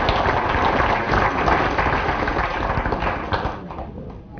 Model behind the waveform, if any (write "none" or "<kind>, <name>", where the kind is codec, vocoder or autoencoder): none